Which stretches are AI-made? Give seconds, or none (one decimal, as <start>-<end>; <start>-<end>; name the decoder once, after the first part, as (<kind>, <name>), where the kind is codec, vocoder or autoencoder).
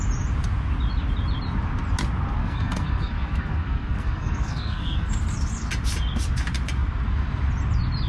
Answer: 2.4-5.1 (codec, SNAC)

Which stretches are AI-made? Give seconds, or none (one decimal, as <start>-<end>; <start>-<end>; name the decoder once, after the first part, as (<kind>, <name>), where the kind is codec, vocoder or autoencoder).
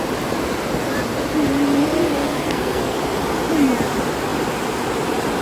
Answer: 2.2-2.9 (codec, SNAC)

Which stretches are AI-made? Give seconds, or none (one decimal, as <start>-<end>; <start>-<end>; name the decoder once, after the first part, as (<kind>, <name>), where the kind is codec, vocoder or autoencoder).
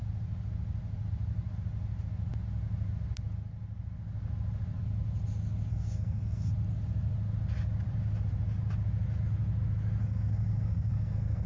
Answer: 5.7-6.5 (codec, SNAC); 10.0-11.5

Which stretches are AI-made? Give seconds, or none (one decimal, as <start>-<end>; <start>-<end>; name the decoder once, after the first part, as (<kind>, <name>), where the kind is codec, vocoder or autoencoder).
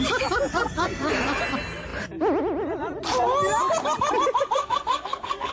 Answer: 0.5-1.1 (codec, SNAC); 4.6-5.5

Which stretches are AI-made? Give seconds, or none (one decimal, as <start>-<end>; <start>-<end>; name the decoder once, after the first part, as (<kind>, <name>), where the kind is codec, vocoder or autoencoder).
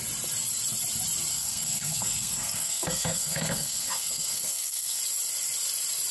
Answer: 1.3-5.0 (codec, SNAC)